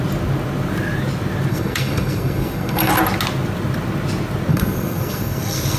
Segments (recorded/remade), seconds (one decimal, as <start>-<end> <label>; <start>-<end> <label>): 0.0-1.5 recorded; 1.5-2.9 remade; 2.9-4.5 recorded; 4.5-5.8 remade